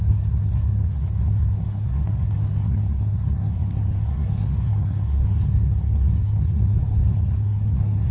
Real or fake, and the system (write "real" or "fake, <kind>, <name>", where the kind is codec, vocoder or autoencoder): fake, codec, SNAC